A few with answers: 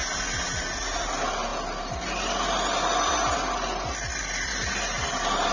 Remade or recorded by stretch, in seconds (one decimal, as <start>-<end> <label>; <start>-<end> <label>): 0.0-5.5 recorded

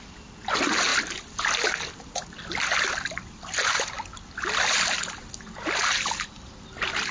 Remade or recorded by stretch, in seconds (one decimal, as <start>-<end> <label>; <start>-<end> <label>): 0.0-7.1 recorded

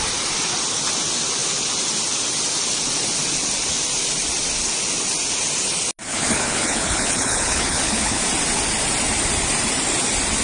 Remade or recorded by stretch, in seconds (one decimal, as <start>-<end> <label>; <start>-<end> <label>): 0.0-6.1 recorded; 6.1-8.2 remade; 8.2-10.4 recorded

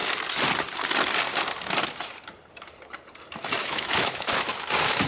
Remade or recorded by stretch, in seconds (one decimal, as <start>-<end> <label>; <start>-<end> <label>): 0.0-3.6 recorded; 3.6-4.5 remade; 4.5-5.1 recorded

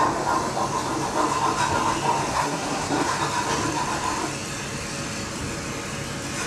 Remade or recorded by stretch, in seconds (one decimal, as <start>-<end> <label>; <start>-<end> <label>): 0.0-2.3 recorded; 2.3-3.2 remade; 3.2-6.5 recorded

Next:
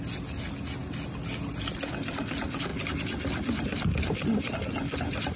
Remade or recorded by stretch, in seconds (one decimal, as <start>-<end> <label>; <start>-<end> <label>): 0.0-5.4 recorded

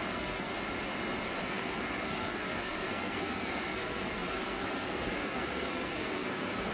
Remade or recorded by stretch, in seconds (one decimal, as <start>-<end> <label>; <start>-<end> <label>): 0.0-0.5 remade; 0.5-1.5 recorded; 1.5-6.7 remade